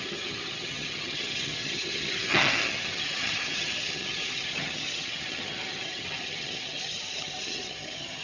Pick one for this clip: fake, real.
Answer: fake